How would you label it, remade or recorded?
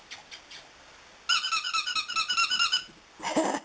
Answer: recorded